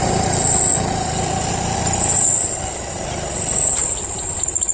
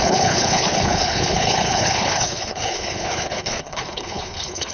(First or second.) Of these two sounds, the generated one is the second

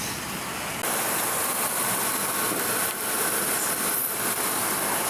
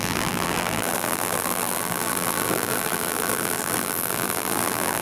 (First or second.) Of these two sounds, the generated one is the second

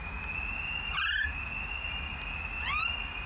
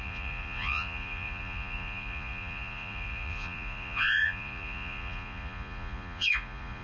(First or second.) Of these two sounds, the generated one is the second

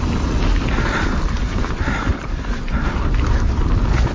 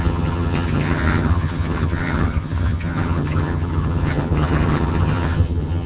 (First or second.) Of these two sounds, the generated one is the second